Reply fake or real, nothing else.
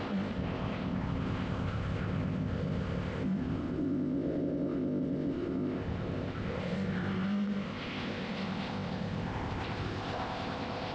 fake